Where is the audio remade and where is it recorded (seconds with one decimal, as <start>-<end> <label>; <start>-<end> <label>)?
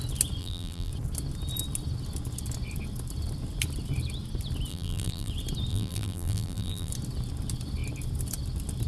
0.0-0.4 recorded; 0.4-0.9 remade; 0.9-4.7 recorded; 4.7-5.3 remade; 5.3-5.7 recorded; 5.7-6.9 remade; 6.9-8.9 recorded